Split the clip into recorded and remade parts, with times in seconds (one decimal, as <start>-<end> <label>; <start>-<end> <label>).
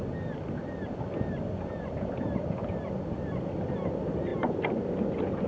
0.0-5.5 recorded